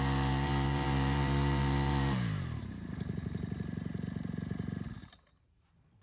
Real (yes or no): no